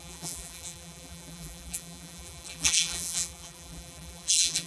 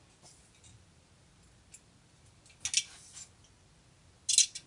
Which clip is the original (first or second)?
second